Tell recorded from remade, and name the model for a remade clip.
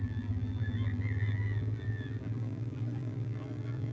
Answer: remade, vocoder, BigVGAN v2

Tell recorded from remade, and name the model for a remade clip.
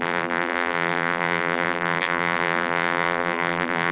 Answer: remade, vocoder, BigVGAN v2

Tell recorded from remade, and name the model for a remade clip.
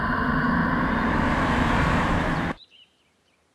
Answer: remade, vocoder, BigVGAN v2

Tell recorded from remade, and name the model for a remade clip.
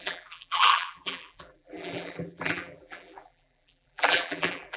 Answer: remade, vocoder, BigVGAN v2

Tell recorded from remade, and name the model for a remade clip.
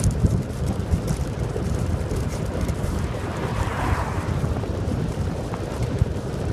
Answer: remade, vocoder, BigVGAN v2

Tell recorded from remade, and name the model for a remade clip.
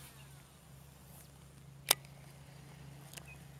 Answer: remade, vocoder, BigVGAN v2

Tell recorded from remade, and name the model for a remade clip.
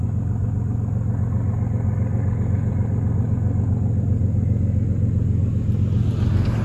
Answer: recorded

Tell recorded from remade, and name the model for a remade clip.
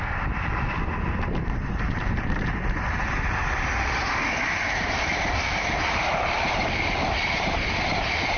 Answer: remade, vocoder, BigVGAN v2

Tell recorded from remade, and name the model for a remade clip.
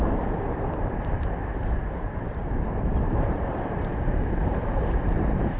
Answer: remade, vocoder, BigVGAN v2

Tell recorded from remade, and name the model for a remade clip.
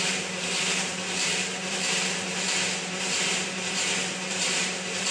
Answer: remade, vocoder, BigVGAN v2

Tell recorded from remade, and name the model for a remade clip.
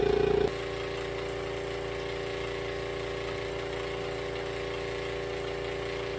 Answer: recorded